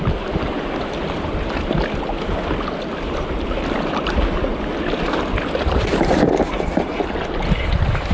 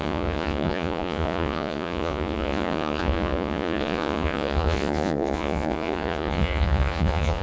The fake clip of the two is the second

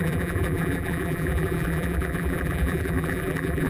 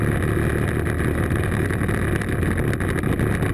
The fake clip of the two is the first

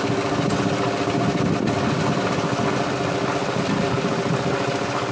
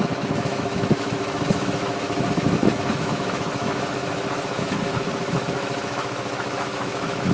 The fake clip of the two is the second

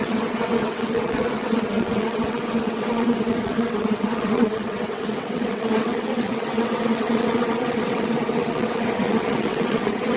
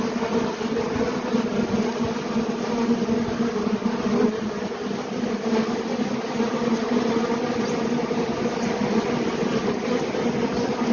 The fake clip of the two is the first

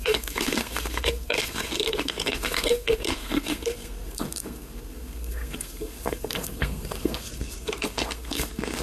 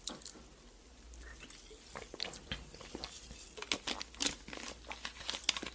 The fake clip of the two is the first